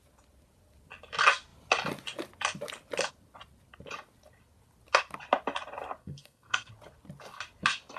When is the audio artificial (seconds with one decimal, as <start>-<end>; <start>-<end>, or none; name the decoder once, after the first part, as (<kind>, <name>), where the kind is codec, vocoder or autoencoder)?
6.0-6.7 (codec, SNAC)

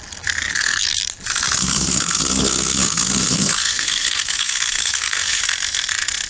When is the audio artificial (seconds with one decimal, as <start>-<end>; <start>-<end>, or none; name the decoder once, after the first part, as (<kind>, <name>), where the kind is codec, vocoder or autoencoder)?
0.4-0.9 (codec, SNAC); 1.6-5.4